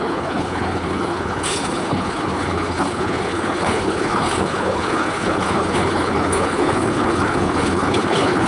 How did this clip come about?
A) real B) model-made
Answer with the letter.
B